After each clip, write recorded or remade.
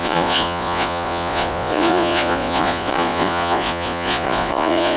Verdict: remade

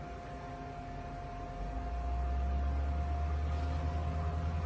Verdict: recorded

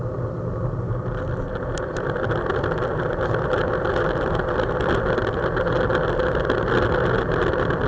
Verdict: recorded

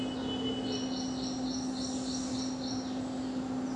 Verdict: recorded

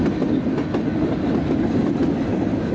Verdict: recorded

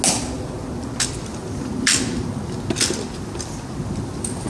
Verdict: recorded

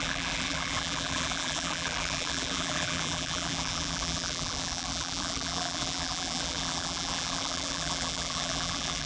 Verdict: remade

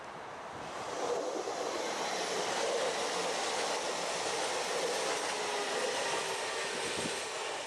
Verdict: recorded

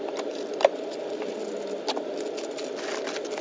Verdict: recorded